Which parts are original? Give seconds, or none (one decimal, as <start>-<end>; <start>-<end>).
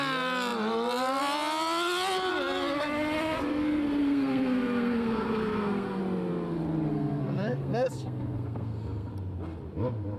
0.0-4.0; 6.0-6.9; 9.1-10.2